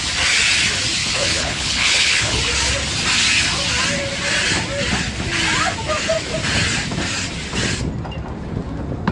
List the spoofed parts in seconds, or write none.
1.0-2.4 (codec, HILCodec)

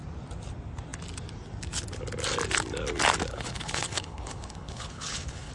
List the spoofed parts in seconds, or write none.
3.3-5.5 (codec, HILCodec)

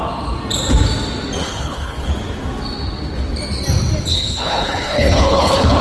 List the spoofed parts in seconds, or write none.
1.4-2.1 (codec, HILCodec); 4.1-5.8

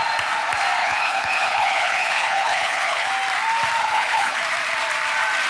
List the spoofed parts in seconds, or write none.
0.8-3.1 (codec, HILCodec); 3.8-4.4

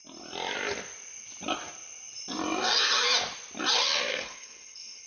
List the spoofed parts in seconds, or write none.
4.1-5.1 (codec, HILCodec)